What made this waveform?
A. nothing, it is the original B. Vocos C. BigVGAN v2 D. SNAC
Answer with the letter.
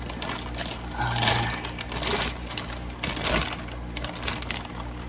A